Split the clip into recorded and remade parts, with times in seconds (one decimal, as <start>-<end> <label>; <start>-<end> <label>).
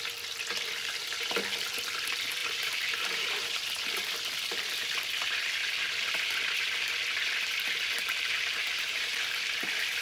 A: 0.0-2.4 recorded; 2.4-3.5 remade; 3.5-8.6 recorded; 8.6-10.0 remade